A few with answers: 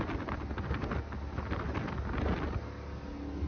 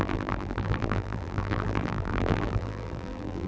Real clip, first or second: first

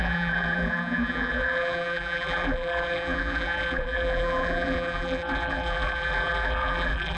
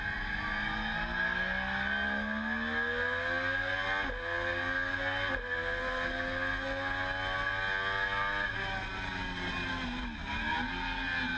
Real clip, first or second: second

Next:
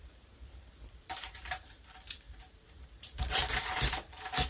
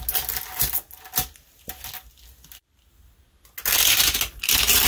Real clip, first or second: second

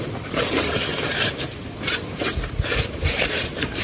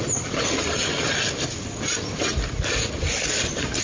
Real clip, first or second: second